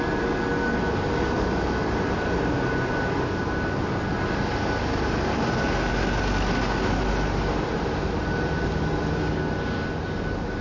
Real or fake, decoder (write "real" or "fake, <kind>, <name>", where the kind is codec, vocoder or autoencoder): real